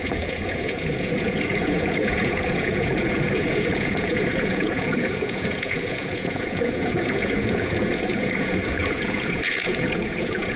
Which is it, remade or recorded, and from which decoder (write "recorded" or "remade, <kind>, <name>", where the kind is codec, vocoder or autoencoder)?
remade, vocoder, Vocos